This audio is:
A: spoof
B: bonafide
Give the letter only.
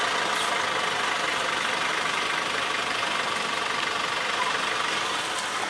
B